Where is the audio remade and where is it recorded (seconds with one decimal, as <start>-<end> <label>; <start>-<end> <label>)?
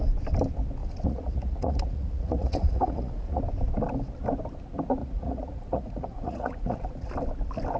0.0-0.8 recorded; 0.8-3.4 remade; 3.4-5.0 recorded; 5.0-7.1 remade; 7.1-7.8 recorded